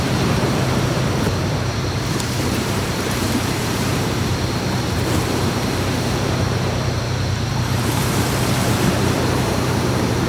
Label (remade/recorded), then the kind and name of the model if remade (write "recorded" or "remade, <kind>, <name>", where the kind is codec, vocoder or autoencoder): remade, vocoder, BigVGAN v2